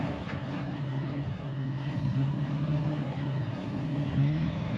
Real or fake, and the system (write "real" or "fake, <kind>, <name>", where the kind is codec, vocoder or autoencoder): fake, codec, SNAC